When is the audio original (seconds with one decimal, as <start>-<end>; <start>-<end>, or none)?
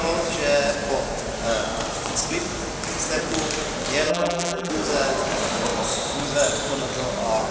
0.0-4.1; 4.7-7.5